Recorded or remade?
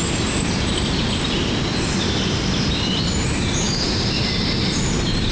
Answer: remade